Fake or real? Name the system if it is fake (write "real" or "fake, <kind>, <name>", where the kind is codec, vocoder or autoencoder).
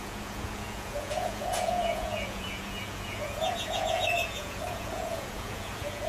fake, vocoder, Vocos